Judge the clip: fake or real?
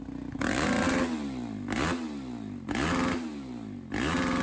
real